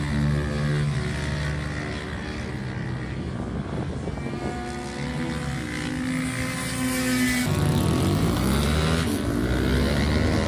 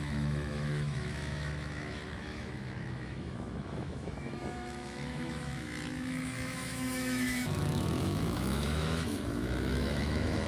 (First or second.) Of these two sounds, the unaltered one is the first